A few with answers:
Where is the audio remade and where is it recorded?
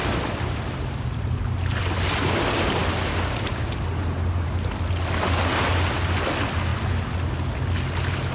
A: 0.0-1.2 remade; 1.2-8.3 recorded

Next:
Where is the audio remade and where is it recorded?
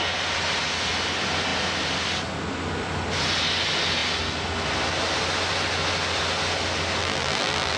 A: 0.0-7.0 recorded; 7.0-7.8 remade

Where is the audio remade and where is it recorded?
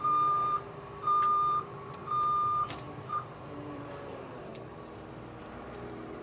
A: 0.0-4.5 remade; 4.5-5.4 recorded; 5.4-6.2 remade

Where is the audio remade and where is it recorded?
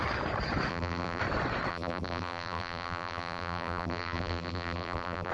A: 0.0-0.7 recorded; 0.7-1.2 remade; 1.2-1.7 recorded; 1.7-5.3 remade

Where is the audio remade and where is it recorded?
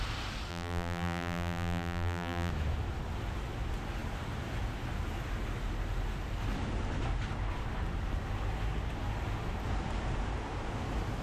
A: 0.0-0.5 recorded; 0.5-2.5 remade; 2.5-11.2 recorded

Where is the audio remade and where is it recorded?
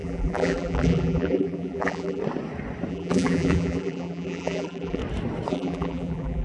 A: 0.0-2.2 remade; 2.2-2.9 recorded; 2.9-5.0 remade; 5.0-5.5 recorded; 5.5-6.4 remade